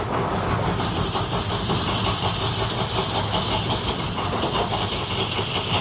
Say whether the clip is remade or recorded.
recorded